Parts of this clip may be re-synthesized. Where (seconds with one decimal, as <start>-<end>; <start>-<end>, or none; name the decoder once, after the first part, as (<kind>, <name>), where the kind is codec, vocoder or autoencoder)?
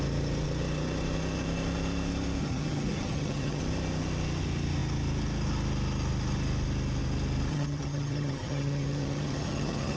2.4-3.6 (vocoder, HiFi-GAN); 7.5-10.0